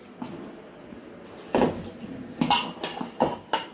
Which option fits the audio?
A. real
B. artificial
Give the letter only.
A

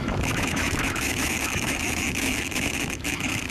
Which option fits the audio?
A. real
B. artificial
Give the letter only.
B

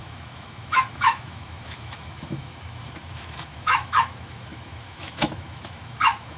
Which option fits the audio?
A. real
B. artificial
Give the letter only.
B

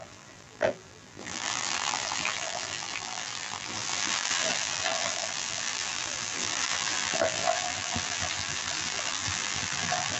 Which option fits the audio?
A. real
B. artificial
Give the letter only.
B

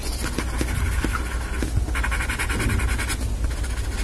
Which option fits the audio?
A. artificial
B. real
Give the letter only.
B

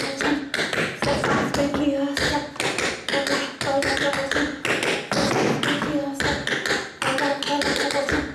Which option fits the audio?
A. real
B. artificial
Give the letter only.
A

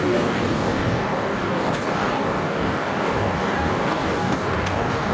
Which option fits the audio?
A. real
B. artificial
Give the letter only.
B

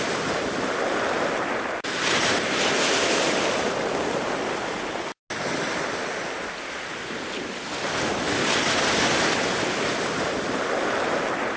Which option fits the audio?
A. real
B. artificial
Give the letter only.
A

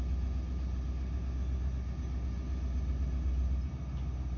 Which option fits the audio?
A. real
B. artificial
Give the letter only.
A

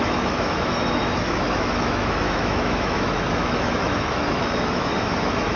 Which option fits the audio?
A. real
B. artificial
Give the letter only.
B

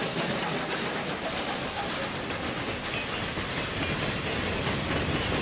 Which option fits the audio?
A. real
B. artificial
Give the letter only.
A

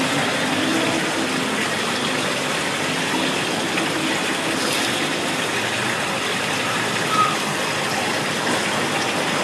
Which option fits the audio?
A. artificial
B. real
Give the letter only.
B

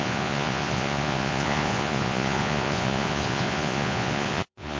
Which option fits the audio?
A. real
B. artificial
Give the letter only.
B